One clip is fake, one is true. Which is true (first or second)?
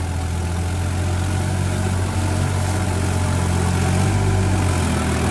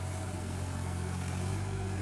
first